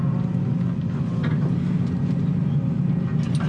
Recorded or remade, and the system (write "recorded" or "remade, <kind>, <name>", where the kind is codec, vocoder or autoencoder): recorded